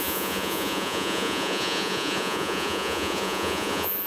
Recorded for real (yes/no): no